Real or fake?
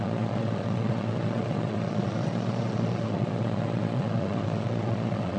fake